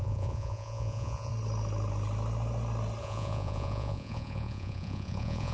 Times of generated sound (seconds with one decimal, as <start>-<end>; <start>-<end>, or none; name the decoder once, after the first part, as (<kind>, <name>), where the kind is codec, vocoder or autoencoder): 0.0-1.3 (vocoder, Vocos); 3.0-5.5